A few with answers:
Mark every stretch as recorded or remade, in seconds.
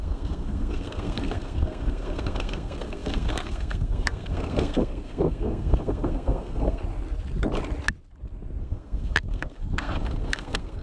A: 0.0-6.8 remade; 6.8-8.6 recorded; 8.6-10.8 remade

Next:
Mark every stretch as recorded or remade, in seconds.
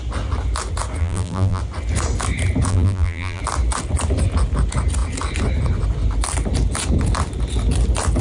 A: 0.0-1.0 recorded; 1.0-1.6 remade; 1.6-2.7 recorded; 2.7-3.4 remade; 3.4-8.2 recorded